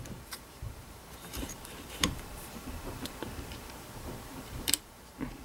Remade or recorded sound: remade